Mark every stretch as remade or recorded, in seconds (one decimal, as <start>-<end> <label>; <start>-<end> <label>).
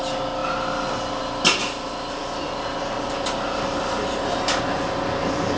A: 0.0-5.6 recorded